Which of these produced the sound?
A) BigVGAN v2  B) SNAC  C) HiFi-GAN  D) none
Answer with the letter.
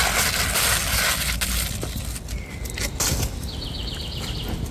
D